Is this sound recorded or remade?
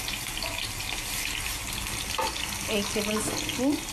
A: recorded